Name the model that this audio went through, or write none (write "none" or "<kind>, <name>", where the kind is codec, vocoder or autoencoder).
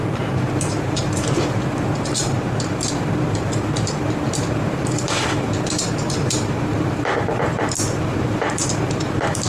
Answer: vocoder, BigVGAN v2